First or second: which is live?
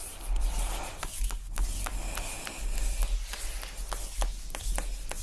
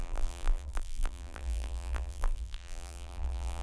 first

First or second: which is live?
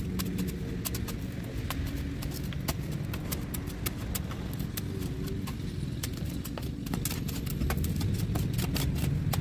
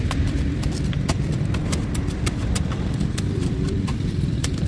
first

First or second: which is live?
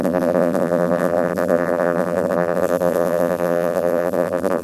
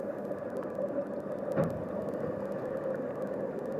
second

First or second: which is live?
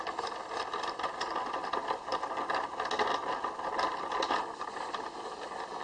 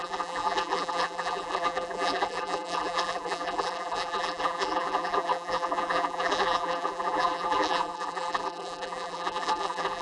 first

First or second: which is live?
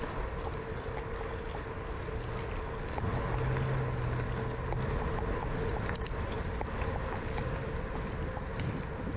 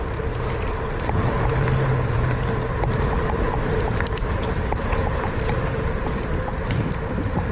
first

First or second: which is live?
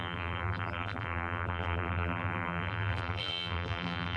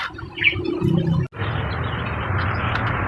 second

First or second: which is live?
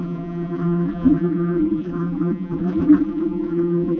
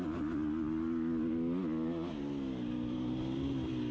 second